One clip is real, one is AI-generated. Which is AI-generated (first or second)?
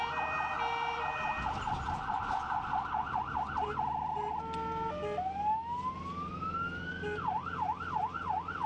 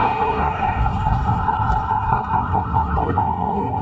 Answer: second